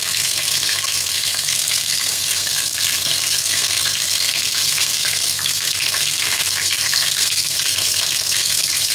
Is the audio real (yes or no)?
no